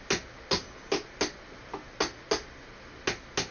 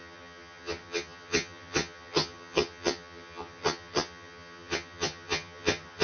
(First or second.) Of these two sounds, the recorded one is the first